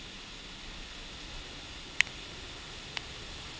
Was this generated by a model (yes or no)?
no